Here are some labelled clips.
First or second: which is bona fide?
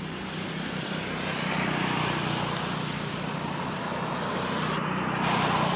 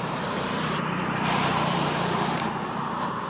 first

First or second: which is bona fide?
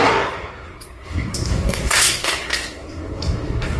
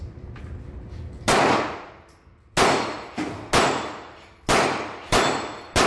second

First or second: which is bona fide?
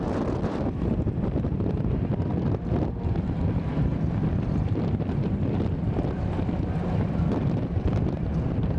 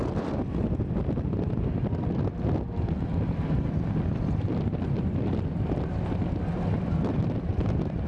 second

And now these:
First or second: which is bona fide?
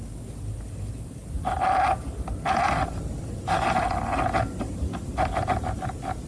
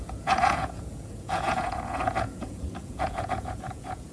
first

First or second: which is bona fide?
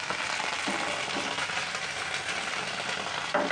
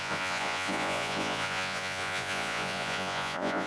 first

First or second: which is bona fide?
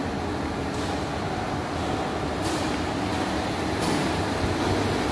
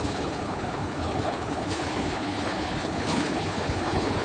first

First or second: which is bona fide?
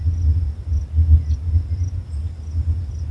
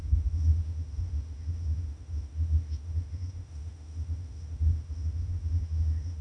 first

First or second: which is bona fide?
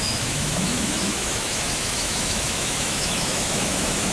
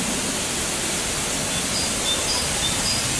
second